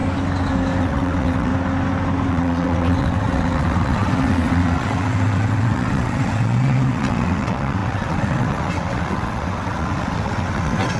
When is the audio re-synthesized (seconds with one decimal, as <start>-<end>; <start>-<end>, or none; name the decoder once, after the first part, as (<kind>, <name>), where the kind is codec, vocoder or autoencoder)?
0.8-1.5 (vocoder, WaveNeXt); 2.3-11.0